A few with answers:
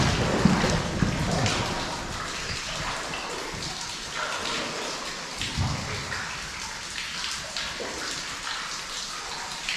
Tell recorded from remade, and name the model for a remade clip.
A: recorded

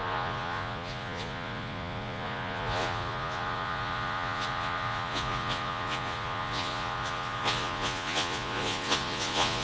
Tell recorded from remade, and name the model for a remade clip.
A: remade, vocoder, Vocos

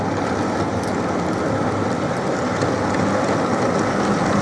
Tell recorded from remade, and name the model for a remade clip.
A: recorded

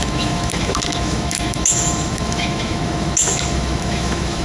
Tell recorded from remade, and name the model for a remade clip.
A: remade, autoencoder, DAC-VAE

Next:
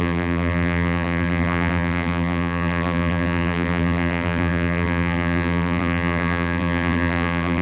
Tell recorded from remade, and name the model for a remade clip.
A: remade, vocoder, BigVGAN v2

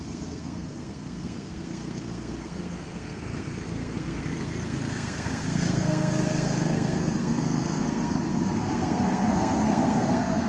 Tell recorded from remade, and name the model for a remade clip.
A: remade, codec, SNAC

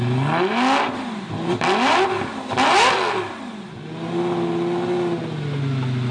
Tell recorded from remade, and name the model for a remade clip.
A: recorded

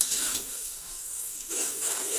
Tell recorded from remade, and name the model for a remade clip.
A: remade, codec, DAC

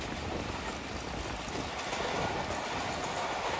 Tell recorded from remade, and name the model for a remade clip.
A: recorded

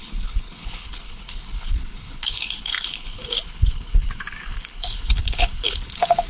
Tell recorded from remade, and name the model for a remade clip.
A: remade, codec, HILCodec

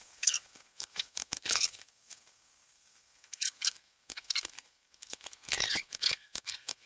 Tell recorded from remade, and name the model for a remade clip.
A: remade, codec, SNAC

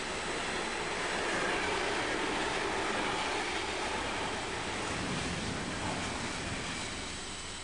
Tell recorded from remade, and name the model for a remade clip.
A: recorded